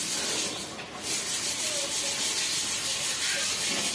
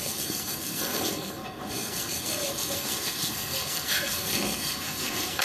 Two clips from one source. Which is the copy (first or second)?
second